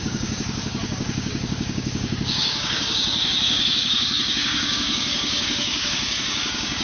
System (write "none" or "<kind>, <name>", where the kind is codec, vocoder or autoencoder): codec, DAC